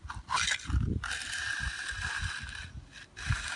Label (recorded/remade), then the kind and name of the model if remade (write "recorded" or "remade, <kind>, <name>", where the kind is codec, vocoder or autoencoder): recorded